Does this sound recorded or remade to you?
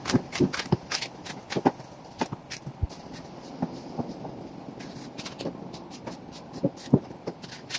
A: recorded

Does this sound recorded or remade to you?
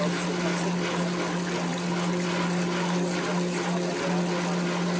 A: recorded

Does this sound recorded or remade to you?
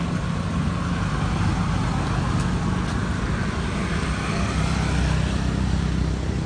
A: recorded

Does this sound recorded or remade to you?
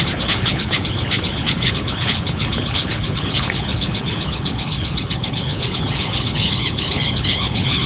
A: remade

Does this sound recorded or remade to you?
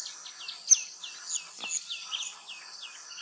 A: recorded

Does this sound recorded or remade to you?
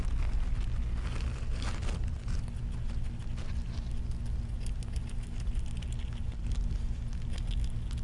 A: recorded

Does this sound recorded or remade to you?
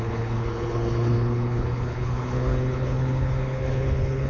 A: remade